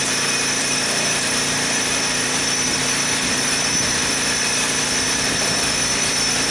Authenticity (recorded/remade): recorded